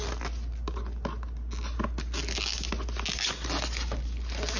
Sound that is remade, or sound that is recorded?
recorded